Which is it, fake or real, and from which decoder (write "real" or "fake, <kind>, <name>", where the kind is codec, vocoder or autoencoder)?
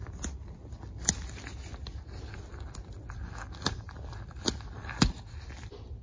real